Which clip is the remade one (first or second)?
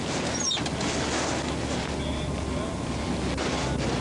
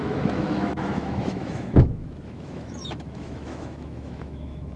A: second